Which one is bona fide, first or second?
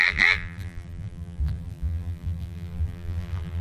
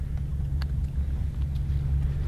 second